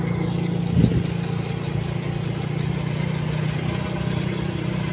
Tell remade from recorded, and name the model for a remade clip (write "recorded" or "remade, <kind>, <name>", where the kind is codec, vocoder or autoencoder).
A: recorded